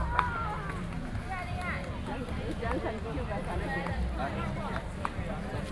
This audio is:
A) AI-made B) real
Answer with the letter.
B